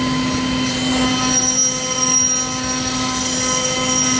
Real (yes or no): yes